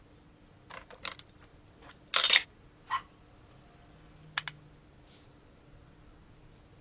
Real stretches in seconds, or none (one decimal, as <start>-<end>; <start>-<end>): 0.0-6.8

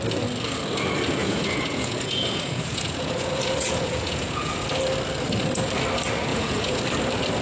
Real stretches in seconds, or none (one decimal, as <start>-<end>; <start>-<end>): 0.0-1.2; 4.5-6.3; 6.8-7.4

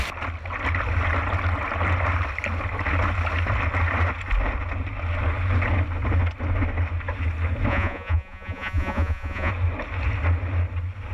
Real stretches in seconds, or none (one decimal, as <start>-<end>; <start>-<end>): 0.0-7.7; 9.5-11.1

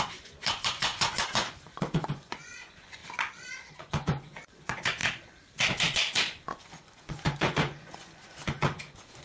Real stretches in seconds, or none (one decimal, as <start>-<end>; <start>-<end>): 3.0-3.7; 5.0-5.9

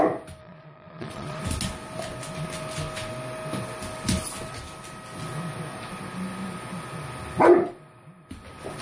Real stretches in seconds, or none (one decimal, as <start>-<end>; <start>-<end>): 0.0-0.4; 1.4-8.8

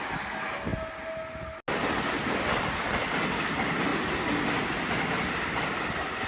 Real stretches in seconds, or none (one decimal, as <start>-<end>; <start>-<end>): 0.0-6.3

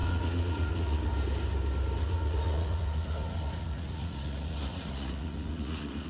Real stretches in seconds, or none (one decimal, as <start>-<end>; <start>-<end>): 1.1-2.0